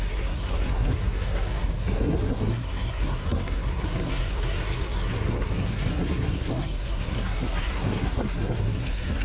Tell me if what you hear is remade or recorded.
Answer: remade